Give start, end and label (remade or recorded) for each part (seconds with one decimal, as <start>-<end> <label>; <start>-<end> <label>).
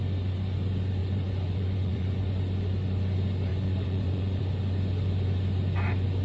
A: 0.0-1.0 recorded; 1.0-2.3 remade; 2.3-3.5 recorded; 3.5-4.4 remade; 4.4-6.2 recorded